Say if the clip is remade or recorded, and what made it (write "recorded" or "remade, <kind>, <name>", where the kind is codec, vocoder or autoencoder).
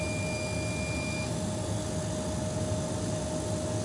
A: recorded